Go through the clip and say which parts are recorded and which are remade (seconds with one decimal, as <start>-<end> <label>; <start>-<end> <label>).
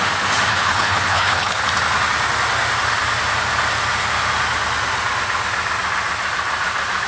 0.0-0.5 recorded; 0.5-1.6 remade; 1.6-7.1 recorded